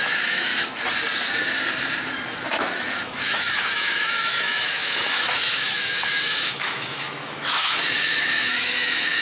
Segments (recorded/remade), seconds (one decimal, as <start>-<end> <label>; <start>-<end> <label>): 0.0-0.5 remade; 0.5-2.7 recorded; 2.7-9.2 remade